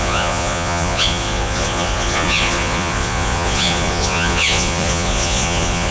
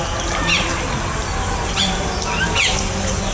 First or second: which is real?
second